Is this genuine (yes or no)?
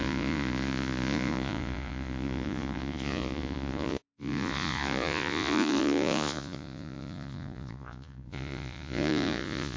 no